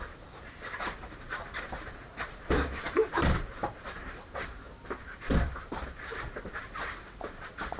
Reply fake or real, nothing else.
fake